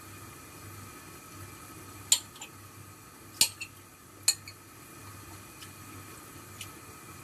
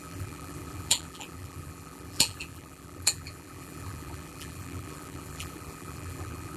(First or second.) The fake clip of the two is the second